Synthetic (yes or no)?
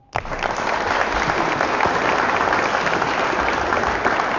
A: no